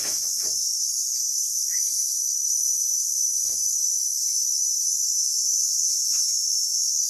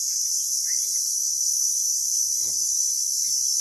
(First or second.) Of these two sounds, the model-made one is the first